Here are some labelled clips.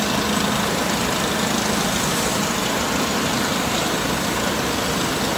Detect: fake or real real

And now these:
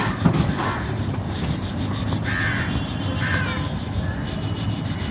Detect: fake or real real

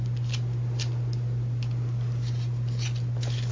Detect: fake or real real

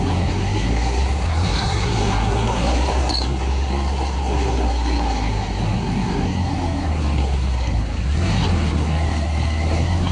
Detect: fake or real fake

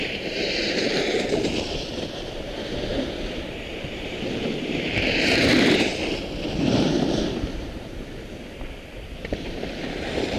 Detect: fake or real fake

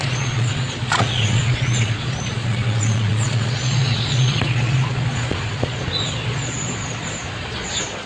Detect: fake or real fake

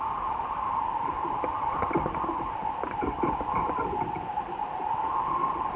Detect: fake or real real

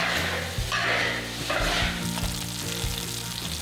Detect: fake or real real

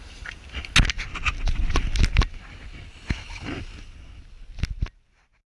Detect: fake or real real